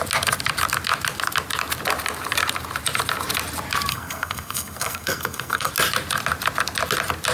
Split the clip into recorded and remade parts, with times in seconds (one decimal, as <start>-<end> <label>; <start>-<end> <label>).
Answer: 0.0-3.9 recorded; 3.9-5.7 remade; 5.7-7.3 recorded